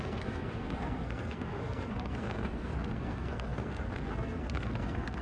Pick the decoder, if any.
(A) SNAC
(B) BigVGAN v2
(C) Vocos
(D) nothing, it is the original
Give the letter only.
A